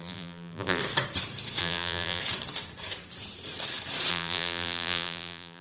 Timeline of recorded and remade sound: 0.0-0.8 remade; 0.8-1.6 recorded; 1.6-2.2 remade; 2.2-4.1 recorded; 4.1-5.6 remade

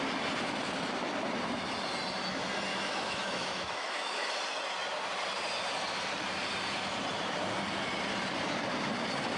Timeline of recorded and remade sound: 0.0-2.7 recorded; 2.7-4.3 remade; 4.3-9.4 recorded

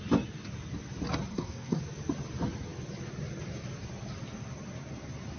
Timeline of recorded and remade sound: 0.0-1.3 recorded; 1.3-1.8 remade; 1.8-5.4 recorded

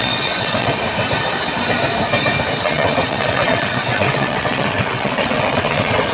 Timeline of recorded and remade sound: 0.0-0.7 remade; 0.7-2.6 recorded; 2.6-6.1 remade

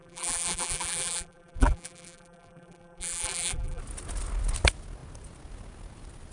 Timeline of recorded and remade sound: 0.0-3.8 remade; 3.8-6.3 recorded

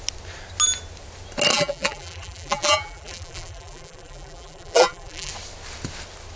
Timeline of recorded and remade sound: 0.0-1.5 recorded; 1.5-5.3 remade; 5.3-6.4 recorded